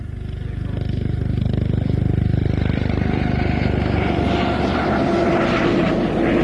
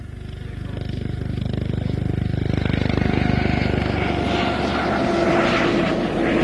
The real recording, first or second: second